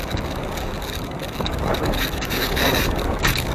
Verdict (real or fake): fake